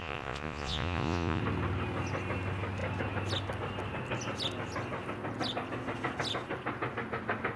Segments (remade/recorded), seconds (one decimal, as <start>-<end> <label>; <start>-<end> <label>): 0.0-1.4 remade; 1.4-7.6 recorded